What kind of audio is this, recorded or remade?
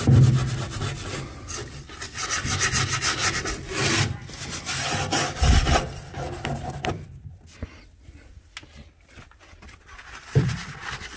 recorded